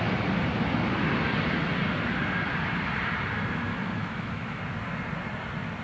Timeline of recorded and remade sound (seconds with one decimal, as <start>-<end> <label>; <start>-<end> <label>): 0.0-3.7 recorded; 3.7-4.6 remade; 4.6-5.8 recorded